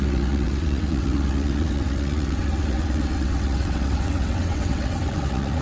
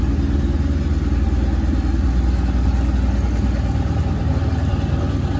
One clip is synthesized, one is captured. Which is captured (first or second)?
second